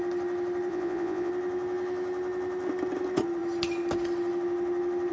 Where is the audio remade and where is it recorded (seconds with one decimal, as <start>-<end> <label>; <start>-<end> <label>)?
0.0-0.7 recorded; 0.7-1.3 remade; 1.3-5.1 recorded